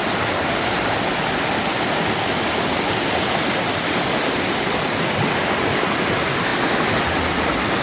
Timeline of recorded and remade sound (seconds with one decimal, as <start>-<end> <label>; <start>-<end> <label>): 0.0-7.8 recorded